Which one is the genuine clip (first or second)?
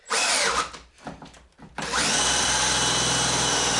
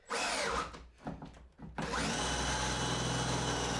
second